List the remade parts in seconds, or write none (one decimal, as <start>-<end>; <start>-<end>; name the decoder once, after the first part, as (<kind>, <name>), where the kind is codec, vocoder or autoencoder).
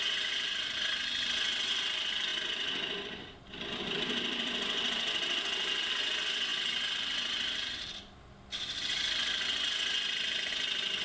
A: 2.3-5.9 (vocoder, BigVGAN v2)